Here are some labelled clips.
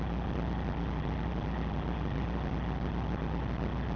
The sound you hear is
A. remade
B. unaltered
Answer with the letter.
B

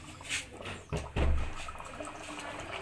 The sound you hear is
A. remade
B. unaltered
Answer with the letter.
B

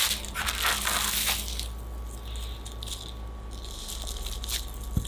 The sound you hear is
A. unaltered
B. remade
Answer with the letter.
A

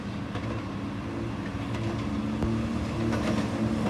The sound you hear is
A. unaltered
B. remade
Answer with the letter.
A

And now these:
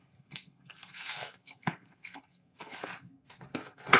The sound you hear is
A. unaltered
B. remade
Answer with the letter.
B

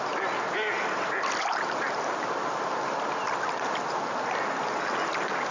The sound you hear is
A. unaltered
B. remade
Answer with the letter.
A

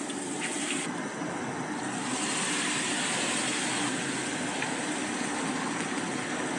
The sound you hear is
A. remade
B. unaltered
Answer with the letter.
B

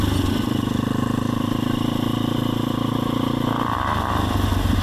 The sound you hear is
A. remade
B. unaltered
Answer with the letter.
B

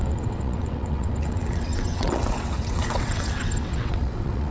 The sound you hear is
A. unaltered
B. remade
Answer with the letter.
B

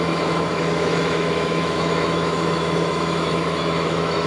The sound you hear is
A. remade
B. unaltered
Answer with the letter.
A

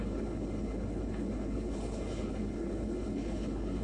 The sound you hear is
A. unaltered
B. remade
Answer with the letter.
B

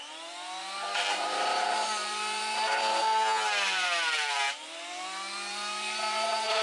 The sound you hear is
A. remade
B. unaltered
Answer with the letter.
A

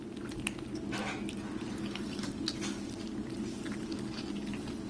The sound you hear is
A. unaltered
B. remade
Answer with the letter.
A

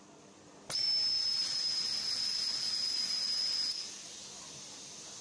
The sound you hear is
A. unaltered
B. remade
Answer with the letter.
B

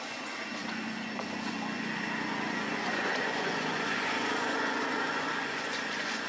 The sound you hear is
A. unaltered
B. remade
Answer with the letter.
B